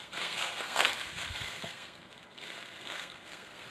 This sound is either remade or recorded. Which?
remade